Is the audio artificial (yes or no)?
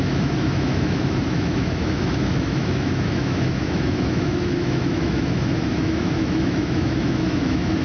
yes